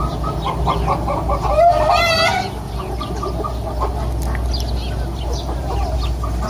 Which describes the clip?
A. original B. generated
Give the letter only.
B